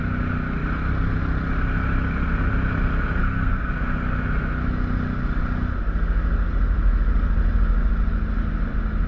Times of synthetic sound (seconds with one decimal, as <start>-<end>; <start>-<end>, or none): 3.2-3.7